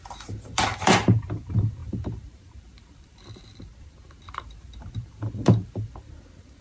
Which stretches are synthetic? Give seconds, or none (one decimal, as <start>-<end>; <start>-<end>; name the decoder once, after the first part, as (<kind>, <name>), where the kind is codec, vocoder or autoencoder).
0.0-6.6 (vocoder, BigVGAN v2)